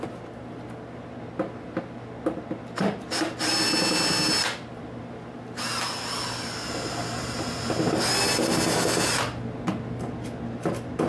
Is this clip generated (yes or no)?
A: no